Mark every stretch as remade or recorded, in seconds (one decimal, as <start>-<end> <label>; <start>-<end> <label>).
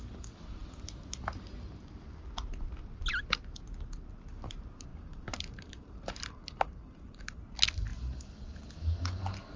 0.0-4.9 recorded; 4.9-7.4 remade; 7.4-9.6 recorded